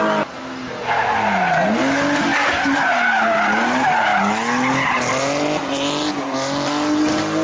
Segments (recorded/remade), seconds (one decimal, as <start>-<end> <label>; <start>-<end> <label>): 0.0-7.4 recorded